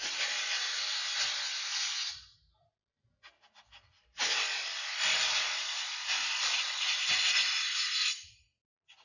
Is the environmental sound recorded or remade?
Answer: recorded